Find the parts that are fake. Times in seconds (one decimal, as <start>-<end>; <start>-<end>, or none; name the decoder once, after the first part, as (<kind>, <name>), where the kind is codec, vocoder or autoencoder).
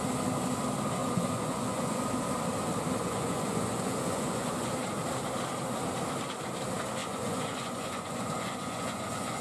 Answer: 1.0-2.0 (vocoder, Vocos); 3.0-4.7; 7.0-9.4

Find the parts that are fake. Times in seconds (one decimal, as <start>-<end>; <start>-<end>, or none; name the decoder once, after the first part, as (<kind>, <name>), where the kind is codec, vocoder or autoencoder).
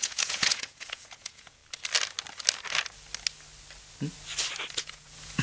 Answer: 0.0-1.6 (vocoder, Vocos); 4.8-5.4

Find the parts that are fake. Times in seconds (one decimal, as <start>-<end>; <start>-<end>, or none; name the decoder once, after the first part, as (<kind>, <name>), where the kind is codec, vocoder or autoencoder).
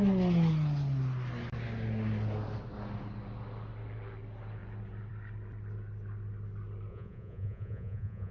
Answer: 6.9-8.3 (vocoder, Vocos)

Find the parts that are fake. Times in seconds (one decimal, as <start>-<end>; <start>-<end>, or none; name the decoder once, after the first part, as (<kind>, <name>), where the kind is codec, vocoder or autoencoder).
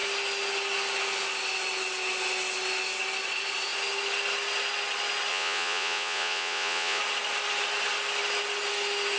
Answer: 5.3-7.0 (vocoder, Vocos)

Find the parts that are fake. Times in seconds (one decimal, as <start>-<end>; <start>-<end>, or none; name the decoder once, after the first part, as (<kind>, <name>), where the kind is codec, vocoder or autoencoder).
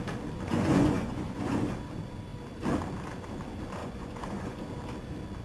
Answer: 0.5-1.7 (vocoder, Vocos); 3.8-4.6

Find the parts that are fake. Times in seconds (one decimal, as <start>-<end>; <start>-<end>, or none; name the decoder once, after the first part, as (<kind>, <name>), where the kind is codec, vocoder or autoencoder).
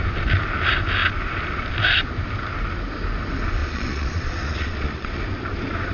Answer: 3.6-5.2 (vocoder, Vocos)